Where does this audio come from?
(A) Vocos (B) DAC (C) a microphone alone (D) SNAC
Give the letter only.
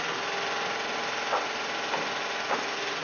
C